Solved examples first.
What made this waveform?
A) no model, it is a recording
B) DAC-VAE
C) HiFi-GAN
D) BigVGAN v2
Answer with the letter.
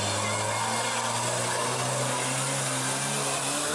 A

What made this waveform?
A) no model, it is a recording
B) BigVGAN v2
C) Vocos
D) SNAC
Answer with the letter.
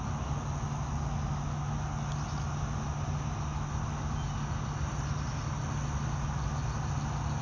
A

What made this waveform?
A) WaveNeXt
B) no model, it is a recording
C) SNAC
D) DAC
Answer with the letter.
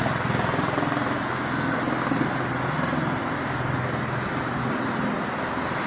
B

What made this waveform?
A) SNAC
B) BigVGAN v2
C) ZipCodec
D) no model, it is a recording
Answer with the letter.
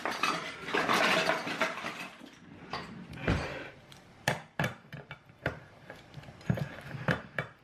D